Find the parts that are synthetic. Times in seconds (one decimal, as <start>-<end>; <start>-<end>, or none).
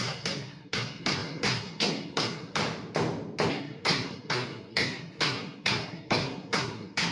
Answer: 0.0-2.6; 3.5-7.1